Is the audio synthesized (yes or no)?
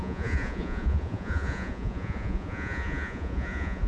yes